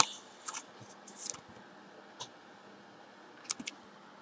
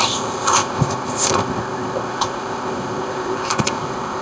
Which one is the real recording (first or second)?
first